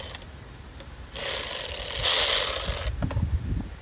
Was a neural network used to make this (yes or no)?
no